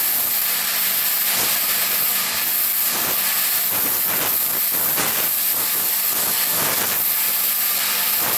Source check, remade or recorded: recorded